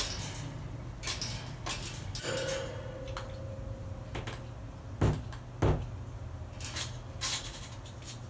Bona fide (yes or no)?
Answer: yes